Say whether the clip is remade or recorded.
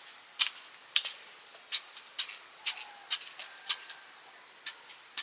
recorded